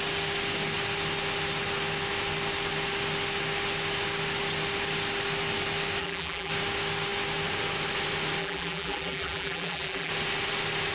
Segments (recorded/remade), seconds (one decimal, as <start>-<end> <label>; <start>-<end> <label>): 0.0-6.0 recorded; 6.0-6.5 remade; 6.5-8.4 recorded; 8.4-10.1 remade; 10.1-10.9 recorded